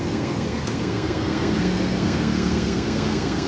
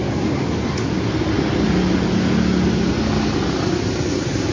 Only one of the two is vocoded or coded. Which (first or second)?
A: first